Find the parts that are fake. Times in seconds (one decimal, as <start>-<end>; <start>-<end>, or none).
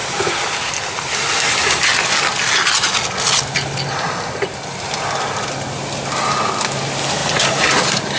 0.0-0.7; 7.2-8.2